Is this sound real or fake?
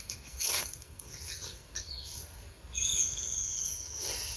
fake